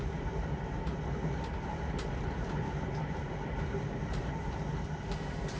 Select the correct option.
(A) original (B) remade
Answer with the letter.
B